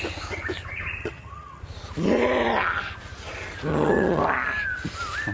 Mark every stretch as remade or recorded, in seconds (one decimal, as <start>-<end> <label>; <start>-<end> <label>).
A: 0.0-1.0 recorded; 1.0-1.6 remade; 1.6-3.7 recorded; 3.7-4.2 remade; 4.2-5.3 recorded

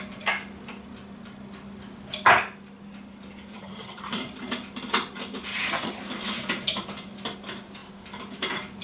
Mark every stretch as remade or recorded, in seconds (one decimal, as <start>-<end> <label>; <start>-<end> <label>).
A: 0.0-3.5 recorded; 3.5-4.0 remade; 4.0-5.5 recorded; 5.5-6.0 remade; 6.0-8.8 recorded

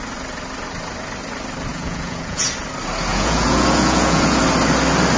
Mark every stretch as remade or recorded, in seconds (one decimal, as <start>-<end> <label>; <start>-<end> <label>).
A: 0.0-1.7 recorded; 1.7-2.5 remade; 2.5-3.1 recorded; 3.1-4.4 remade; 4.4-5.2 recorded

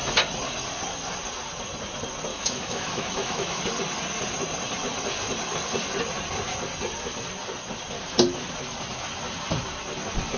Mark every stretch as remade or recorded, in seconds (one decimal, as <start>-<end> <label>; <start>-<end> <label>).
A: 0.0-2.3 recorded; 2.3-3.6 remade; 3.6-10.4 recorded

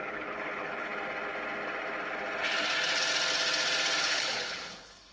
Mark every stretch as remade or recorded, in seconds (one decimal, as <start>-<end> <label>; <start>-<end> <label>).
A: 0.0-0.9 remade; 0.9-4.0 recorded; 4.0-5.1 remade

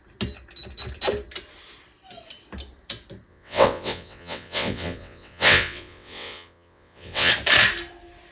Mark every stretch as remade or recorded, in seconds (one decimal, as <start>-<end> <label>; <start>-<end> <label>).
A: 0.0-3.3 recorded; 3.3-7.3 remade; 7.3-8.3 recorded